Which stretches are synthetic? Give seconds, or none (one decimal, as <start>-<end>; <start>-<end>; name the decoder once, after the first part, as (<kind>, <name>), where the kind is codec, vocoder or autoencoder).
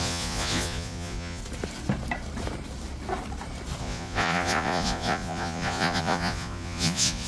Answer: 0.0-1.4 (vocoder, Vocos); 3.8-7.3